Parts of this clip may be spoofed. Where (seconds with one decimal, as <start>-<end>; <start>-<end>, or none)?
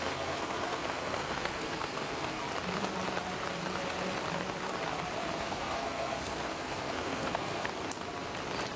0.0-2.4; 5.4-7.7